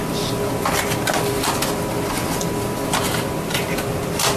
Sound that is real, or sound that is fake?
real